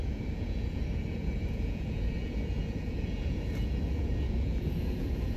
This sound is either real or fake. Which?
fake